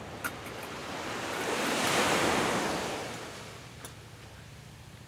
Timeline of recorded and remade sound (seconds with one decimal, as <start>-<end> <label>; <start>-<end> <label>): 0.0-0.8 recorded; 0.8-2.3 remade; 2.3-5.1 recorded